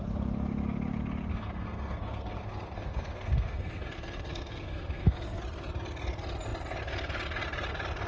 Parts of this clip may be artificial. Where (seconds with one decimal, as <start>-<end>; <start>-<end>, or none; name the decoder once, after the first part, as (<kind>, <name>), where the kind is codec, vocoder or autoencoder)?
1.3-5.4 (codec, SNAC)